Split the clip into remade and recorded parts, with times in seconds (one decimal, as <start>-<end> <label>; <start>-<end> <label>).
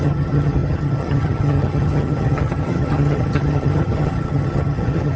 0.0-5.2 remade